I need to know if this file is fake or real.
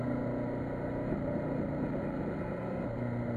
real